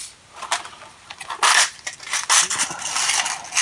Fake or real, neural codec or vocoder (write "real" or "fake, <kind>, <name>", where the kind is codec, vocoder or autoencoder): real